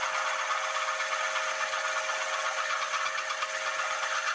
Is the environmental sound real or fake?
real